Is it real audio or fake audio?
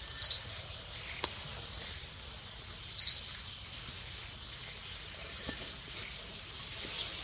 real